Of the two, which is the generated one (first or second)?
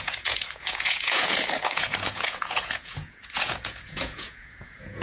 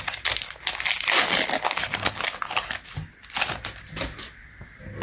first